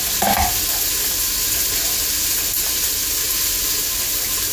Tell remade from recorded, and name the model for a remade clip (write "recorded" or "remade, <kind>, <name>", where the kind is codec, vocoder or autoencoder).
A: recorded